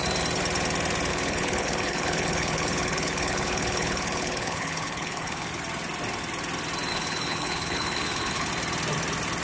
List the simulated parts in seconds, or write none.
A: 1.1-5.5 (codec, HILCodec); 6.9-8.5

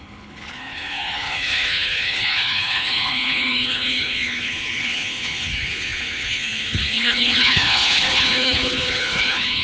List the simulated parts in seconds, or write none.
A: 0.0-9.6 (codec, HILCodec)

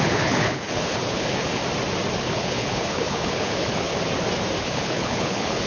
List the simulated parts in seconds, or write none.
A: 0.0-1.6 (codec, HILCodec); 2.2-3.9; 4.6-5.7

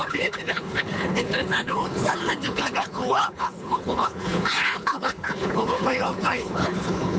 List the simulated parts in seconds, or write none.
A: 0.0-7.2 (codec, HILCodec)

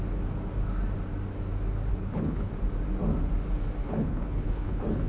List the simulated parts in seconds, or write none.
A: 1.9-2.5 (codec, HILCodec); 3.8-5.1